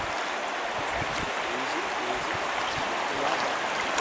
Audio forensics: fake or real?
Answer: real